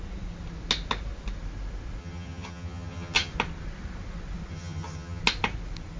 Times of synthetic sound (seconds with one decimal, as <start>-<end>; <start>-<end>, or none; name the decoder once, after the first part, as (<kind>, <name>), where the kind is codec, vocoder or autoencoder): 2.0-3.3 (vocoder, HiFi-GAN); 4.5-5.2